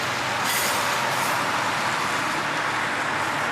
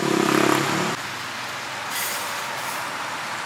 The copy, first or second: second